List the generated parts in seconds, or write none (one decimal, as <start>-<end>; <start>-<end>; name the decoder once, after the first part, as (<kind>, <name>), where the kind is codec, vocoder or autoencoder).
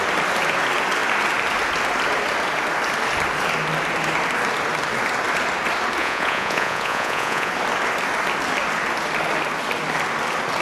6.0-7.5 (vocoder, Vocos)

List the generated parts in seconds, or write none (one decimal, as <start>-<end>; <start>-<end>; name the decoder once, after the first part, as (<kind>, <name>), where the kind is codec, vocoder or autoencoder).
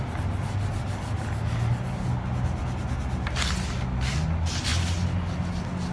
none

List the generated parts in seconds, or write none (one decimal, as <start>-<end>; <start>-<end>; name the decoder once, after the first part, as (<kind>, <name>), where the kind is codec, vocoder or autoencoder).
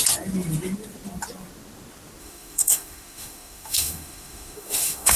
2.2-5.2 (autoencoder, DAC-VAE)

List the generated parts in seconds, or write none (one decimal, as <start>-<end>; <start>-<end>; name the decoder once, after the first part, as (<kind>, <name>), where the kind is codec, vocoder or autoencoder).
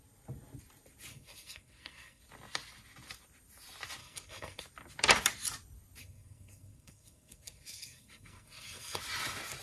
1.1-2.2 (codec, SNAC); 4.0-4.6; 6.0-9.0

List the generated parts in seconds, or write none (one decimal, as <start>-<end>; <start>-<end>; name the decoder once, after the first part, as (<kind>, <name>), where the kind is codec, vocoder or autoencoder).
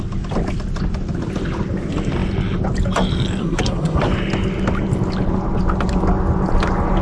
3.4-4.0 (codec, SNAC)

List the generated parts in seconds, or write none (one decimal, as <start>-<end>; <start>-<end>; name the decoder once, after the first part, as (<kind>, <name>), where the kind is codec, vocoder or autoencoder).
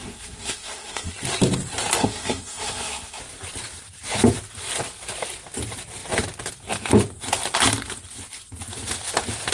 0.0-1.1 (codec, SNAC); 2.0-3.2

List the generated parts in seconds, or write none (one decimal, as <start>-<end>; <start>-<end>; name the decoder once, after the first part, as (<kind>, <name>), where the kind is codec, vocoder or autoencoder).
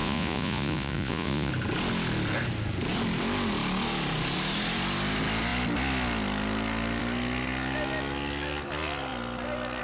0.0-1.5 (vocoder, Vocos)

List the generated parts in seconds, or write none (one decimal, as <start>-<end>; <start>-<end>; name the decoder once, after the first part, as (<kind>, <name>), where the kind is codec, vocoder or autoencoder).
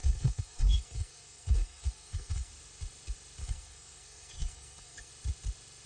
0.0-2.5 (codec, SNAC); 3.4-5.1